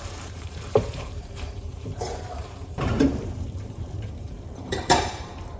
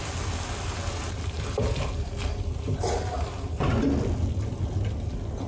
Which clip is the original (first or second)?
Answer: second